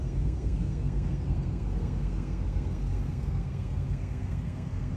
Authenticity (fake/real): fake